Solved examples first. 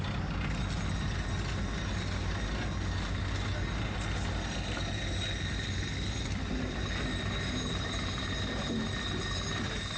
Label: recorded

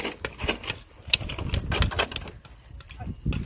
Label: recorded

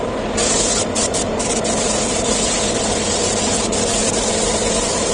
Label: recorded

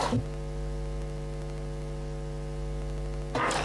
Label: recorded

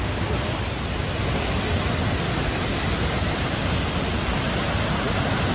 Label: recorded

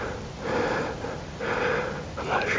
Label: recorded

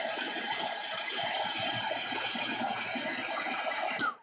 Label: remade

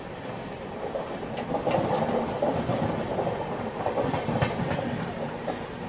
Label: recorded